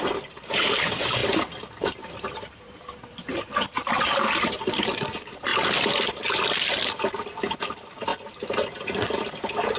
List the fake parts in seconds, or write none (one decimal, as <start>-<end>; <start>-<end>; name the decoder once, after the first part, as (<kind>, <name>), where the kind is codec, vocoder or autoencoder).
0.0-1.2 (vocoder, BigVGAN v2); 1.8-5.5; 7.6-8.1; 9.2-9.8